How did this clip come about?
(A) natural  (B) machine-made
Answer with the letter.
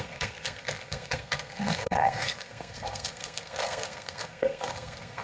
B